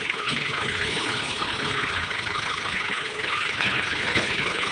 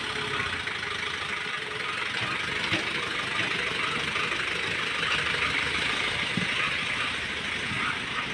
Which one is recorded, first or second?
second